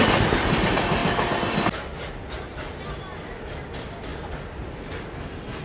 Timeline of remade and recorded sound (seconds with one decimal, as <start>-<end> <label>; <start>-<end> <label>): 0.0-5.6 recorded